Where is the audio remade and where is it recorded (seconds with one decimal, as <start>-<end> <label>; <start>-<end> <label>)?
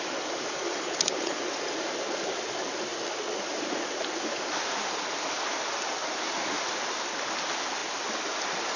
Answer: 0.0-0.8 recorded; 0.8-1.4 remade; 1.4-8.8 recorded